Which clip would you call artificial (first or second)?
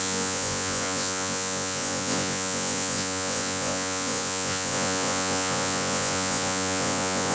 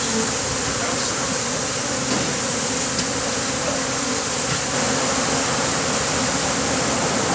first